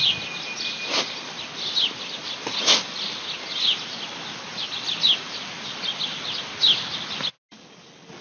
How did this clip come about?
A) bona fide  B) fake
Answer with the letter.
A